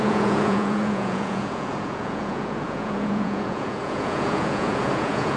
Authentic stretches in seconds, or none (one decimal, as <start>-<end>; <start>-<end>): none